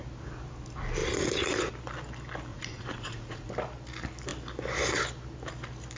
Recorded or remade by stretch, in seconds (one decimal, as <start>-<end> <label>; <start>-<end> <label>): 0.0-2.5 recorded; 2.5-3.5 remade; 3.5-6.0 recorded